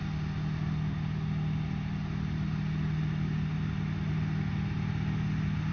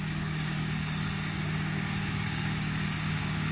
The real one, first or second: first